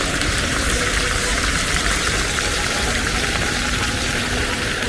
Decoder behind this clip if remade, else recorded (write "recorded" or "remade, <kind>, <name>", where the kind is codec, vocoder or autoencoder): remade, vocoder, BigVGAN v2